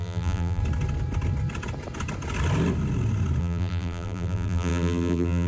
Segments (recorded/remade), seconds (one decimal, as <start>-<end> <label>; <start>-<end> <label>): 0.0-0.6 remade; 0.6-3.4 recorded; 3.4-5.5 remade